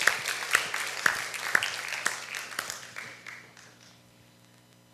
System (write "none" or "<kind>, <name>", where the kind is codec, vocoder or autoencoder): none